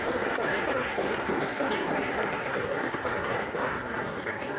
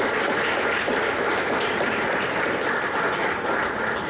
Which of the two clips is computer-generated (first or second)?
first